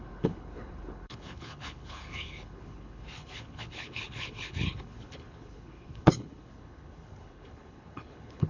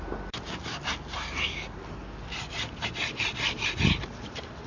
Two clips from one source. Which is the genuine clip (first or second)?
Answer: second